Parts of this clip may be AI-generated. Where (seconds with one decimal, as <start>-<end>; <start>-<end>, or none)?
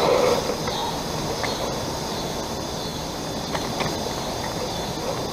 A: 0.8-2.2; 2.9-4.7